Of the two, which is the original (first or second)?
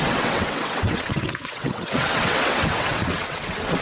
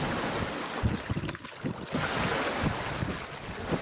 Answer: second